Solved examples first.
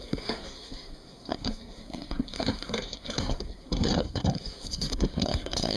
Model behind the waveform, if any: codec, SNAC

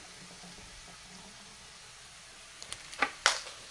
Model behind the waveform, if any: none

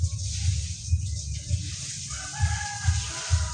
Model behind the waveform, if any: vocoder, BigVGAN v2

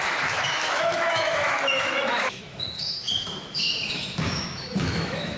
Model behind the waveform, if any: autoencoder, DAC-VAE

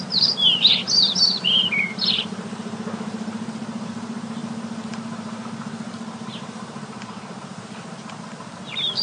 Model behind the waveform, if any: vocoder, BigVGAN v2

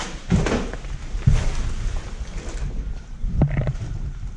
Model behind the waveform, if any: none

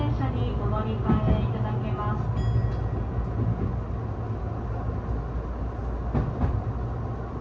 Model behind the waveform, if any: none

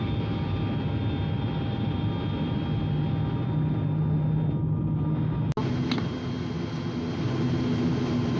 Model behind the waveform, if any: none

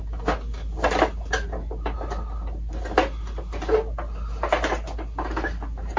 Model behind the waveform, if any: none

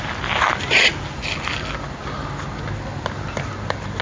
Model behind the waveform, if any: none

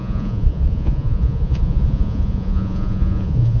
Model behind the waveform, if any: vocoder, Vocos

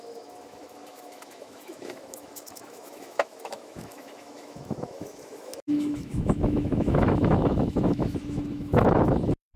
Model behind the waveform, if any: autoencoder, DAC-VAE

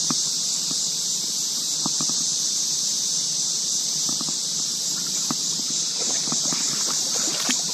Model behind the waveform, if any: vocoder, BigVGAN v2